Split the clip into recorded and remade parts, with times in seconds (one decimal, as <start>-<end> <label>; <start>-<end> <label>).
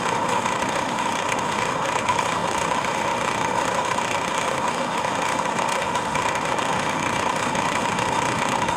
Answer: 0.0-8.8 remade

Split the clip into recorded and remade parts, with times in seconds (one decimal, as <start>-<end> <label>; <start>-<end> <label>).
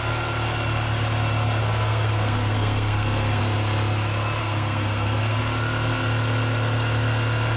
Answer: 0.0-1.6 recorded; 1.6-3.4 remade; 3.4-4.4 recorded; 4.4-5.4 remade; 5.4-7.6 recorded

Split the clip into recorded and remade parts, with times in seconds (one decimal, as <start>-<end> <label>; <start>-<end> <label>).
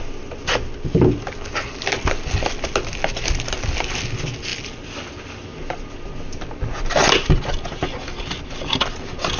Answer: 0.0-9.4 recorded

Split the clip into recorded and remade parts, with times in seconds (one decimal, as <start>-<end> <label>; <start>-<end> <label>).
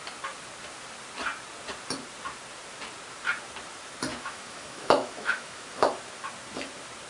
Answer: 0.0-4.1 recorded; 4.1-5.9 remade; 5.9-7.1 recorded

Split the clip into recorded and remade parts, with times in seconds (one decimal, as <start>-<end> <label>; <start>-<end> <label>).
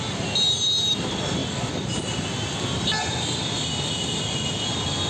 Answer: 0.0-5.1 recorded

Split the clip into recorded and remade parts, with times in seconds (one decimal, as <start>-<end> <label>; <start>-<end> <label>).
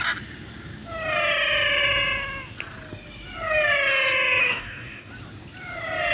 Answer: 0.0-4.4 recorded; 4.4-5.1 remade; 5.1-6.1 recorded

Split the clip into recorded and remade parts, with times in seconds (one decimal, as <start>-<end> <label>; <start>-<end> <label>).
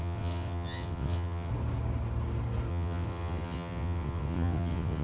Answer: 0.0-1.5 remade; 1.5-2.7 recorded; 2.7-5.0 remade